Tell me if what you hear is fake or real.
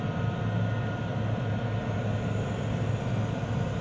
real